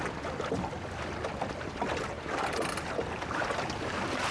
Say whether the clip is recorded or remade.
recorded